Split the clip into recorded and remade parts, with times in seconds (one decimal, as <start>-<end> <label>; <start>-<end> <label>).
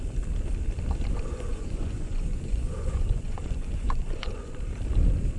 0.0-1.3 recorded; 1.3-4.5 remade; 4.5-5.4 recorded